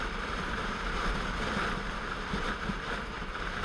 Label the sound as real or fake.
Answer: fake